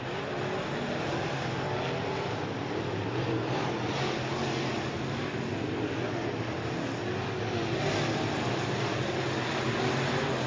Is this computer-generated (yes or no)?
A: no